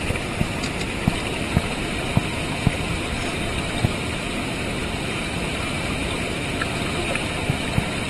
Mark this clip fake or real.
fake